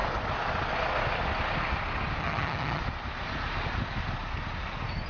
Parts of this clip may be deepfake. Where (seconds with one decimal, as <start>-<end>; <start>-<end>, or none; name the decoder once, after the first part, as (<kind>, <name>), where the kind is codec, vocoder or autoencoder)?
2.2-2.8 (vocoder, HiFi-GAN)